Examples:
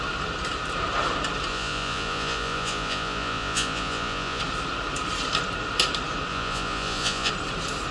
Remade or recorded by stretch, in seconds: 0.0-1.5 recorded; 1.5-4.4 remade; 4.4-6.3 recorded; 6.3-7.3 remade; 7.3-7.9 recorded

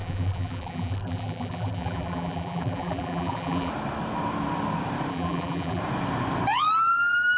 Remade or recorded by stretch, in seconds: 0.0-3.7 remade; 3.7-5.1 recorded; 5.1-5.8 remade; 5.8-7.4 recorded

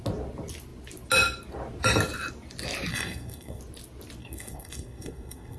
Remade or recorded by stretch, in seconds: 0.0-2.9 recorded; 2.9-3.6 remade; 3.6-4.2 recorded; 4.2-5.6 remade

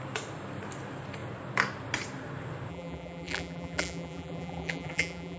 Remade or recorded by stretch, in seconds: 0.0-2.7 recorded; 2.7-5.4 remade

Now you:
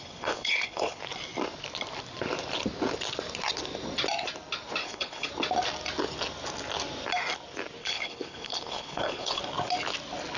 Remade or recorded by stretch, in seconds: 0.0-1.0 remade; 1.0-4.8 recorded; 4.8-5.3 remade; 5.3-7.8 recorded; 7.8-9.4 remade; 9.4-10.4 recorded

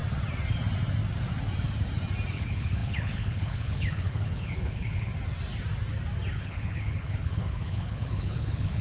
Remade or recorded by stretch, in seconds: 0.0-2.3 recorded; 2.3-5.1 remade; 5.1-6.3 recorded; 6.3-8.8 remade

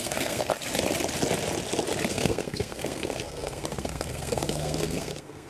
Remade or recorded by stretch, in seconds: 0.0-0.5 remade; 0.5-2.1 recorded; 2.1-5.5 remade